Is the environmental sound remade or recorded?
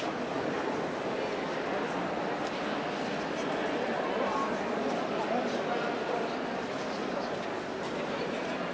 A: recorded